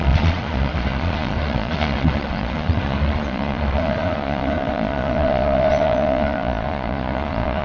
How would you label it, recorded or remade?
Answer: remade